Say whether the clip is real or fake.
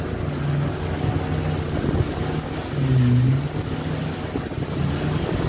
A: real